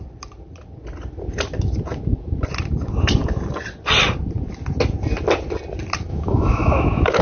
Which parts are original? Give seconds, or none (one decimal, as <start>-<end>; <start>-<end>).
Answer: 0.0-6.1